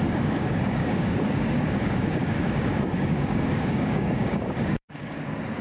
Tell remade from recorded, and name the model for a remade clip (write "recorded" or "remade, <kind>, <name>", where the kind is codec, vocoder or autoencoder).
remade, codec, DAC